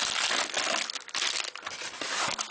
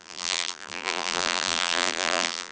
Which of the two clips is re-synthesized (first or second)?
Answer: second